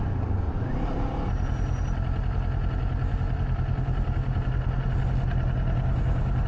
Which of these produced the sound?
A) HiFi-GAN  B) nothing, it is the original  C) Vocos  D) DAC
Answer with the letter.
B